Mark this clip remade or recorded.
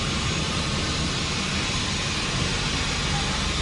recorded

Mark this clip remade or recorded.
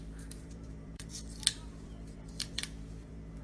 remade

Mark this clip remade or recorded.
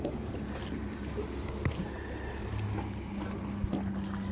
recorded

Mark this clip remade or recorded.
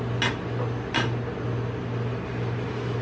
recorded